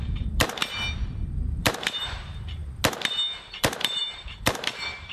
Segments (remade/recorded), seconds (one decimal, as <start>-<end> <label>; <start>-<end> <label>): 0.0-0.6 remade; 0.6-1.5 recorded; 1.5-2.6 remade; 2.6-3.5 recorded; 3.5-5.1 remade